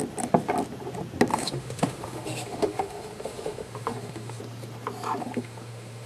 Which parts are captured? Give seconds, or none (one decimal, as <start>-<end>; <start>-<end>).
0.0-1.3; 4.4-5.2